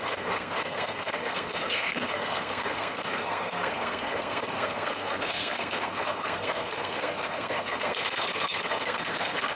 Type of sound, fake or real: fake